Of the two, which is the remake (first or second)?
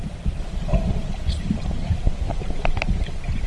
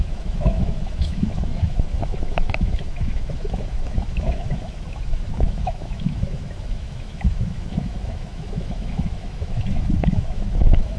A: second